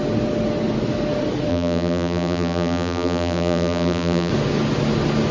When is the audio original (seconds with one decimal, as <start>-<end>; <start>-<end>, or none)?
0.0-1.5; 4.3-5.3